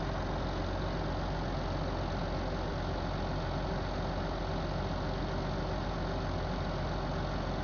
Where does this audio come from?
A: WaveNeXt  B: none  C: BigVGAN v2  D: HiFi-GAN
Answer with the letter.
B